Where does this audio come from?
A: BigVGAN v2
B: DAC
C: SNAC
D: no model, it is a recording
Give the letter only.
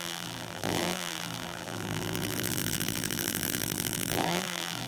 A